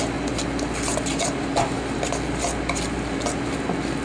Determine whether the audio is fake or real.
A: real